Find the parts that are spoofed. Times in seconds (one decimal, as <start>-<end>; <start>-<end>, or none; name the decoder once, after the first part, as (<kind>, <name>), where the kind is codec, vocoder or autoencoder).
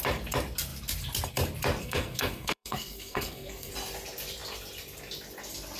1.8-3.7 (codec, SNAC)